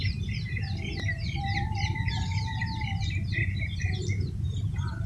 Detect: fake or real fake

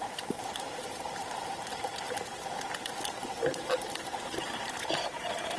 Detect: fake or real fake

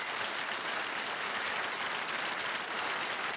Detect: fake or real real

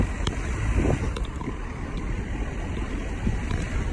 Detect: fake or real fake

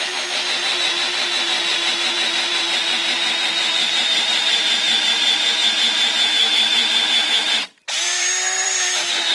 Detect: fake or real fake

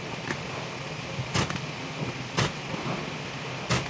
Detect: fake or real fake